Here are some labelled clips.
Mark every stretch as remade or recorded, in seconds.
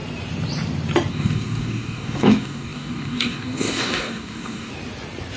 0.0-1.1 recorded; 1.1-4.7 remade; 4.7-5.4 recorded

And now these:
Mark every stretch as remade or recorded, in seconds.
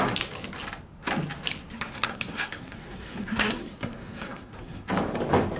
0.0-1.7 recorded; 1.7-4.9 remade; 4.9-5.6 recorded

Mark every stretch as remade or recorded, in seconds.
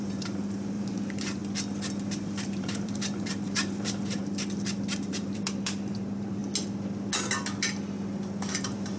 0.0-1.4 remade; 1.4-2.2 recorded; 2.2-4.2 remade; 4.2-5.1 recorded; 5.1-6.4 remade; 6.4-8.5 recorded; 8.5-9.0 remade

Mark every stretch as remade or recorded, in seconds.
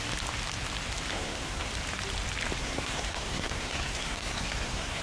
0.0-1.1 recorded; 1.1-1.7 remade; 1.7-2.6 recorded; 2.6-5.0 remade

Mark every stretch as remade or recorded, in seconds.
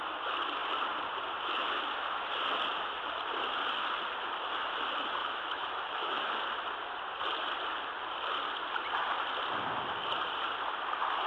0.0-5.2 recorded; 5.2-6.3 remade; 6.3-11.3 recorded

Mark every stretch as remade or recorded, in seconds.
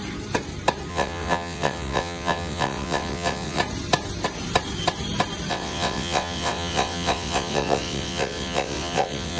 0.0-0.9 recorded; 0.9-3.6 remade; 3.6-5.5 recorded; 5.5-9.4 remade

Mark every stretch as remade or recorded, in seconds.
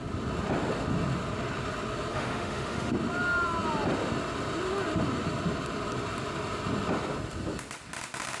0.0-2.1 recorded; 2.1-2.9 remade; 2.9-8.4 recorded